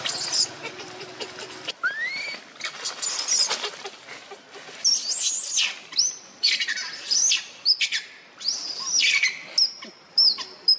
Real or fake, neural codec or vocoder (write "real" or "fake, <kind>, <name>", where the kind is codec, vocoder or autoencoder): real